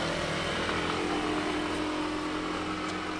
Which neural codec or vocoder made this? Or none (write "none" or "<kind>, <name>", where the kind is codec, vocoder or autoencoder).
none